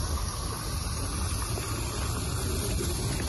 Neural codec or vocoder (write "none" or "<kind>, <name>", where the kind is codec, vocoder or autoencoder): none